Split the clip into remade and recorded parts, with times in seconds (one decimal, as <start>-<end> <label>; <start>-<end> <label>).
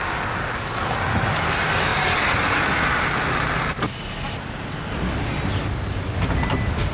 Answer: 0.0-6.9 recorded